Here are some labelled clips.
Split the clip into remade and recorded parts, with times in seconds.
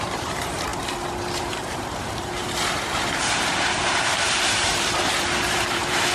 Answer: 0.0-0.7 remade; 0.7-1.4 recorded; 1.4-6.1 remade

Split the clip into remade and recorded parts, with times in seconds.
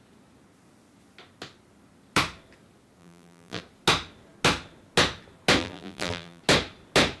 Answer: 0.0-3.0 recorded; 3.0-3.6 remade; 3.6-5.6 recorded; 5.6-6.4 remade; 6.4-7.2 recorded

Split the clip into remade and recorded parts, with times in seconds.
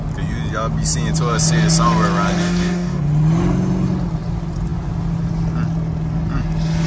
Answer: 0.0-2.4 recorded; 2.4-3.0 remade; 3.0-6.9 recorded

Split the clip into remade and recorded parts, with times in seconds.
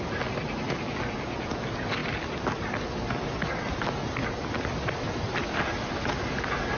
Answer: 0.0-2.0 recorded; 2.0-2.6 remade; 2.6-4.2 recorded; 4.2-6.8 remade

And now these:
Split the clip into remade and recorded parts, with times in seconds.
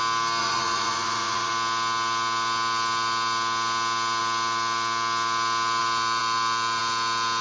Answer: 0.0-0.4 recorded; 0.4-1.5 remade; 1.5-7.4 recorded